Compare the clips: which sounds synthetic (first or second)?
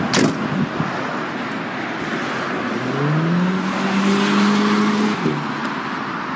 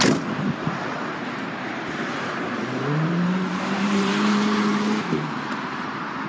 second